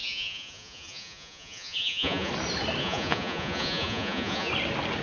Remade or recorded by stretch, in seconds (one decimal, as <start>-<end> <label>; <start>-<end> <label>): 0.0-2.3 remade; 2.3-2.8 recorded; 2.8-4.5 remade; 4.5-5.0 recorded